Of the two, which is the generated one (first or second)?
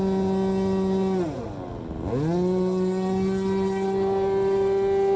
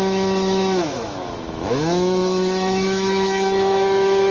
second